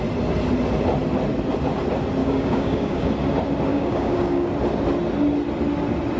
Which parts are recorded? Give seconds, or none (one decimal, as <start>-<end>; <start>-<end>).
0.0-2.2; 3.1-3.7; 4.5-6.2